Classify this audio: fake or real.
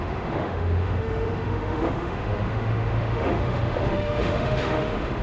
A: fake